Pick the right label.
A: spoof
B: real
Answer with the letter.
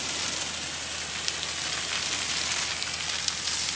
B